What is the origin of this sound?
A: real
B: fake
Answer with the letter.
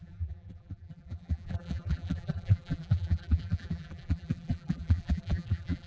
B